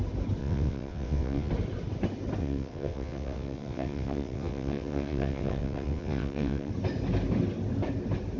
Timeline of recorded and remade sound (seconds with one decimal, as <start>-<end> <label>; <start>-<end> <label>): 0.0-0.4 recorded; 0.4-1.5 remade; 1.5-2.4 recorded; 2.4-6.7 remade; 6.7-8.4 recorded